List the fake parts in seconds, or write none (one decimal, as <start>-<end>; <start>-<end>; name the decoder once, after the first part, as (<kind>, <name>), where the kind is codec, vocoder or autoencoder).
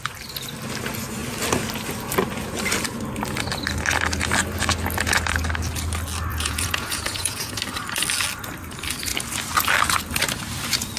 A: 6.3-7.6 (vocoder, Vocos)